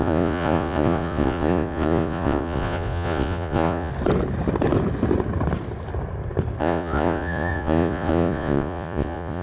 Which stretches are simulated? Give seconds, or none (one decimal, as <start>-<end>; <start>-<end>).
0.0-3.9; 6.6-9.4